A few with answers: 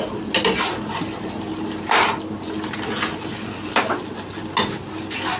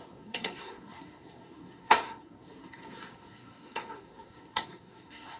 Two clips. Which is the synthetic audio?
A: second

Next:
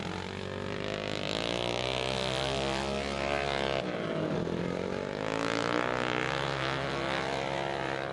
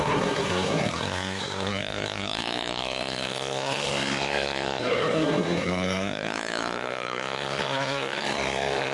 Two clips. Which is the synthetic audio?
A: second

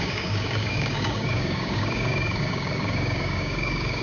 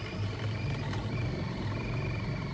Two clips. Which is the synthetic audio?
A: first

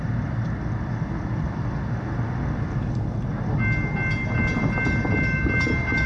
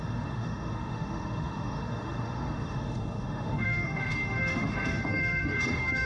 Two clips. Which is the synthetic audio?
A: second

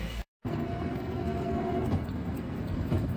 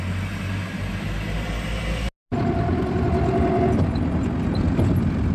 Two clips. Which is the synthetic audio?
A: first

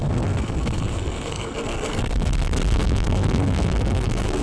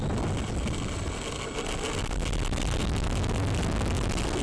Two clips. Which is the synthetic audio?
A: first